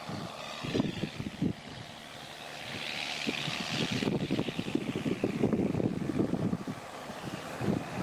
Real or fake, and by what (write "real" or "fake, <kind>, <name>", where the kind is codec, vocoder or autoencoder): real